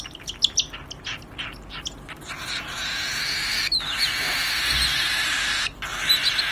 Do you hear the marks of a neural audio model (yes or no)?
no